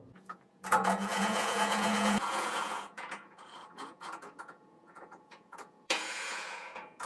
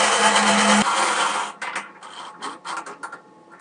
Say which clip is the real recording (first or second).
second